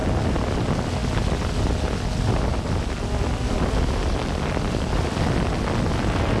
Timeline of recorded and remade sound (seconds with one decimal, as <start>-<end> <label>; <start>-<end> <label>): 0.0-6.4 recorded